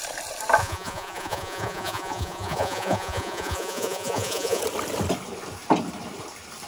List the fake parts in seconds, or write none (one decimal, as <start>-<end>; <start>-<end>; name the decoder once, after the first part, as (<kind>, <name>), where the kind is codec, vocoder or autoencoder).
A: 0.6-4.6 (vocoder, Vocos)